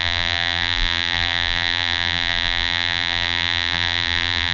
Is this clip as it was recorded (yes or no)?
no